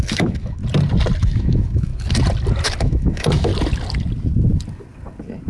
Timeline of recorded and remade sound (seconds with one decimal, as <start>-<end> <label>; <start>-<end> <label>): 0.0-0.6 remade; 0.6-1.2 recorded; 1.2-1.9 remade; 1.9-2.8 recorded; 2.8-3.5 remade; 3.5-5.5 recorded